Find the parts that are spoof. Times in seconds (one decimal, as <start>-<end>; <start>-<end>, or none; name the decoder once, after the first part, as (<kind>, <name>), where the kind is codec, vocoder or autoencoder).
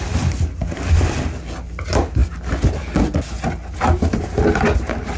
none